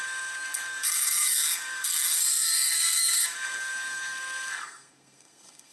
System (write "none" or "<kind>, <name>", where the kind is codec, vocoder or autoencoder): codec, SNAC